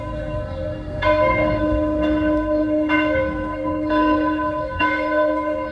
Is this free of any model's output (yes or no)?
no